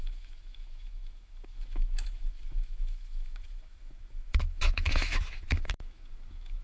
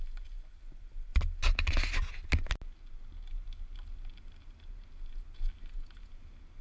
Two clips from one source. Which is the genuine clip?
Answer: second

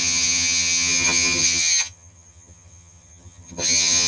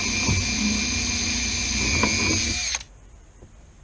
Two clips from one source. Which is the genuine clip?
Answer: second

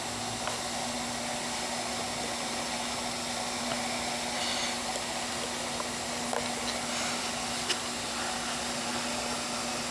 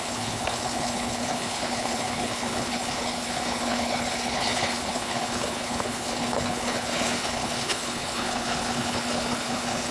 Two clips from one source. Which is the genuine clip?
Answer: first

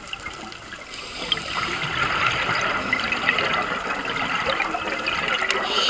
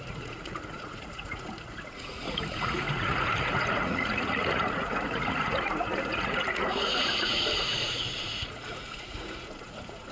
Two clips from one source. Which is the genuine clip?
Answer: first